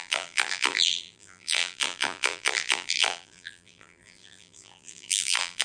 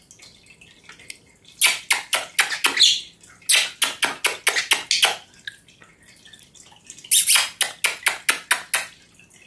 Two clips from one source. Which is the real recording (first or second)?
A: second